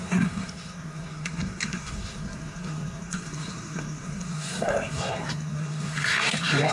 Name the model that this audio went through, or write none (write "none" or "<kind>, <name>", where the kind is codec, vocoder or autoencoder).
codec, SNAC